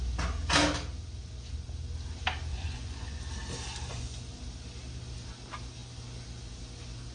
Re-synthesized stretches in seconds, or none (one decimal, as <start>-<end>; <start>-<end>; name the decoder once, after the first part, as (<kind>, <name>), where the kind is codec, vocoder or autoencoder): 2.5-3.2 (vocoder, Vocos); 3.9-4.4